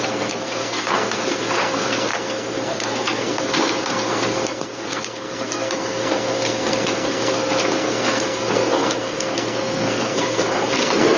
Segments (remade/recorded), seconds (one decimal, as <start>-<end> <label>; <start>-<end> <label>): 0.0-11.2 remade